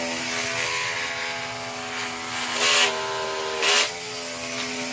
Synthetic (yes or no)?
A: no